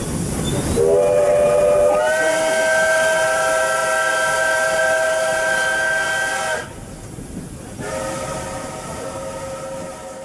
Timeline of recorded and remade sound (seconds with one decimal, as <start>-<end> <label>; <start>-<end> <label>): 0.0-10.2 recorded

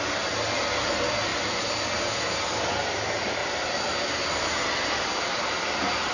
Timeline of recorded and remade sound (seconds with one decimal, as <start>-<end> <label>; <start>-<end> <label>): 0.0-6.1 recorded

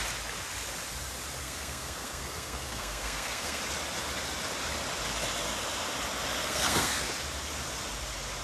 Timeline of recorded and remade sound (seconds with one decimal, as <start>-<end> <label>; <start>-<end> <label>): 0.0-1.4 recorded; 1.4-3.6 remade; 3.6-6.4 recorded; 6.4-7.0 remade; 7.0-8.4 recorded